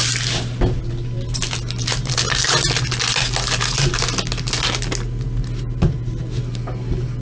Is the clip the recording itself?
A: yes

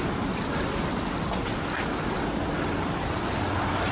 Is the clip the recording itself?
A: yes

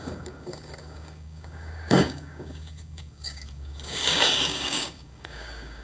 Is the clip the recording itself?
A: no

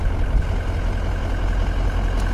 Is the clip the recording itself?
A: yes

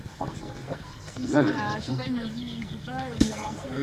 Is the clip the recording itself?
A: no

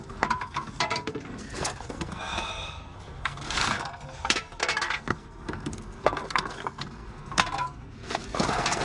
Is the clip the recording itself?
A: no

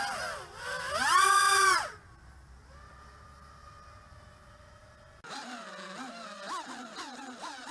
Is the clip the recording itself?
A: yes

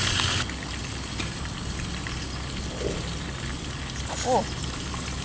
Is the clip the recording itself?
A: yes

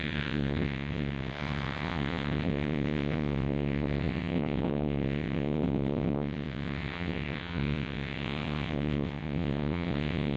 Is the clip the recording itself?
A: no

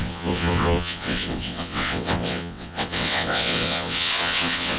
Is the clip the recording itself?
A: no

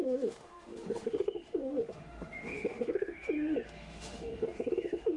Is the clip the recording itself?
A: no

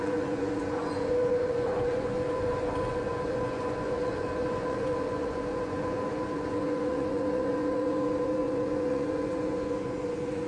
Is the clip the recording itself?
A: no